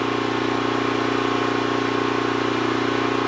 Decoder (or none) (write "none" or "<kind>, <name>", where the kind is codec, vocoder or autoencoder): none